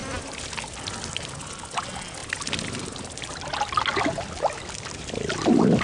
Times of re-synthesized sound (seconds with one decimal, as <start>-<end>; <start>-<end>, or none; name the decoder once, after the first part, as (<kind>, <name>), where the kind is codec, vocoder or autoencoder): none